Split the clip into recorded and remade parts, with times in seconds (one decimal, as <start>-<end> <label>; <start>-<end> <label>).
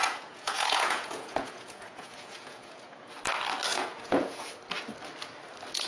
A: 0.0-3.1 remade; 3.1-3.7 recorded; 3.7-4.4 remade; 4.4-5.9 recorded